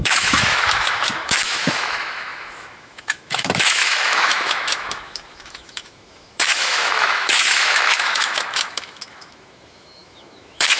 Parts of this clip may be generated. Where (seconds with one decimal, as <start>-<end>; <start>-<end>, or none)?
0.0-10.8

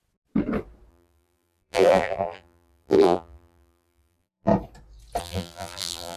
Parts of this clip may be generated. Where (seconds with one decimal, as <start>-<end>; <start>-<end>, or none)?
0.9-4.5; 5.2-6.2